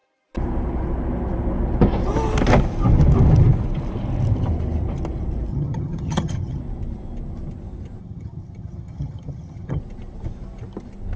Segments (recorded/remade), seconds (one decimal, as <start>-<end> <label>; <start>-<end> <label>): 0.0-5.5 recorded; 5.5-6.6 remade; 6.6-8.0 recorded; 8.0-9.8 remade; 9.8-11.2 recorded